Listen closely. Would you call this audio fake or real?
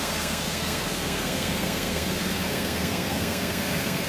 fake